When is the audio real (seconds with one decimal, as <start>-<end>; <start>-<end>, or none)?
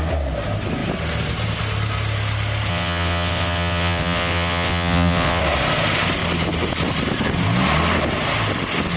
0.0-2.7; 5.4-9.0